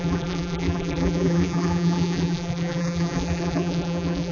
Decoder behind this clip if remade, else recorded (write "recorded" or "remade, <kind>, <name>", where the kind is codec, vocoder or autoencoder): remade, vocoder, BigVGAN v2